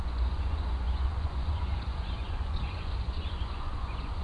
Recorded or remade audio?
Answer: remade